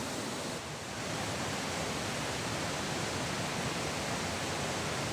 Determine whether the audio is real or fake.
real